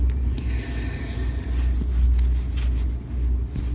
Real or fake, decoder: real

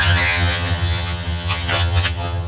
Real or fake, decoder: fake, vocoder, HiFi-GAN